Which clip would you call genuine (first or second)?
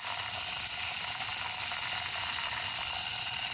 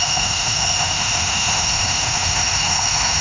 first